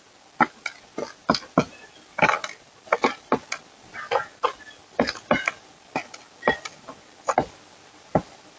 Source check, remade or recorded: recorded